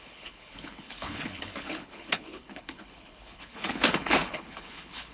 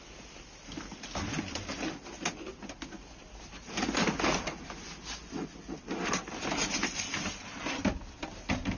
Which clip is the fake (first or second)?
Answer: first